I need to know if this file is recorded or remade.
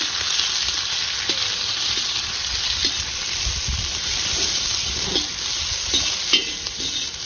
recorded